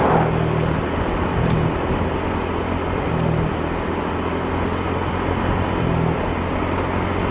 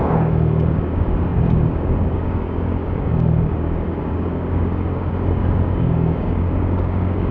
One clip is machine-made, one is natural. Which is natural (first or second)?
first